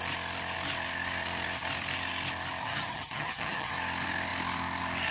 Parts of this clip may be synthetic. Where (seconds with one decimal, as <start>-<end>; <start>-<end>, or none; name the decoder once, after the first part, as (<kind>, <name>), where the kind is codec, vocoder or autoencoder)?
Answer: 2.6-3.7 (vocoder, HiFi-GAN)